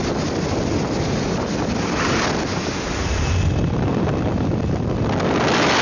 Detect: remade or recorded recorded